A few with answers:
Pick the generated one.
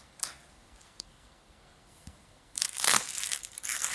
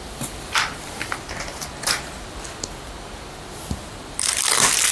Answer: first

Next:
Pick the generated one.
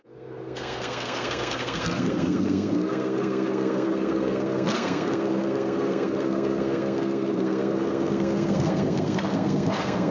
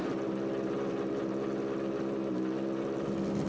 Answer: first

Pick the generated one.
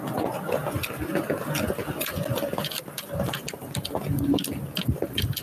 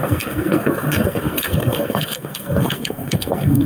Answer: second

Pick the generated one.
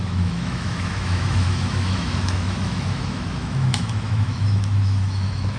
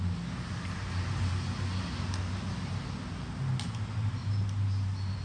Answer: first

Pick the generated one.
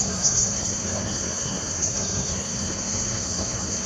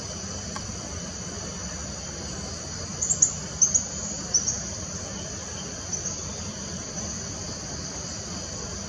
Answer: first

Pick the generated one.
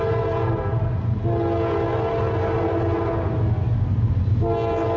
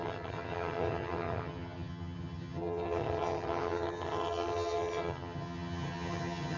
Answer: second